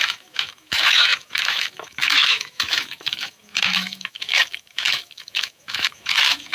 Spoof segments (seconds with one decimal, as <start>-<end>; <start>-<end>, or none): 0.0-6.5